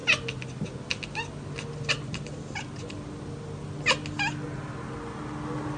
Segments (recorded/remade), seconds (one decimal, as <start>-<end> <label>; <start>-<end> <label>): 0.0-5.8 recorded